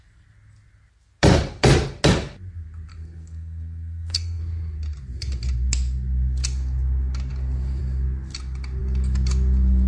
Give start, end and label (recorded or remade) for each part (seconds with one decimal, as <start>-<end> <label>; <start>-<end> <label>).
0.0-2.9 recorded; 2.9-4.4 remade; 4.4-9.9 recorded